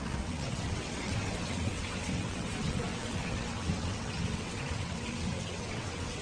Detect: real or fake fake